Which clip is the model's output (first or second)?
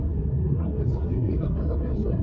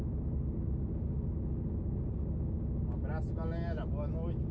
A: first